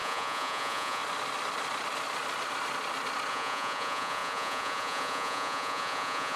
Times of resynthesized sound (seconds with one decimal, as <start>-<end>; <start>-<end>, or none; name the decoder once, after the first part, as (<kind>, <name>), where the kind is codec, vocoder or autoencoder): 0.0-1.0 (vocoder, Vocos); 3.3-6.4